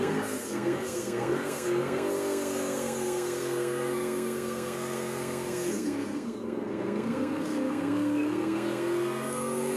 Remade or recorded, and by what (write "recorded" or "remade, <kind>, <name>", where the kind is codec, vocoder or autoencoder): remade, codec, SNAC